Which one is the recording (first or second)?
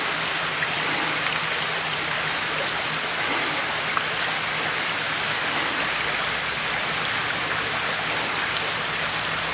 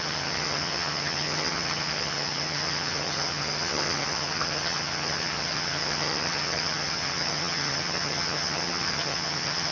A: first